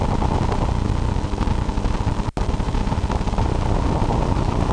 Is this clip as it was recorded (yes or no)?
yes